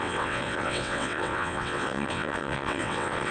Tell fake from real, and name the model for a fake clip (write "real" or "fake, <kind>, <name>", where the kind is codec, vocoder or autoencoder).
fake, vocoder, WaveNeXt